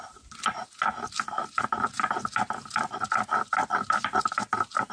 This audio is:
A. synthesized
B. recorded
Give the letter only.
B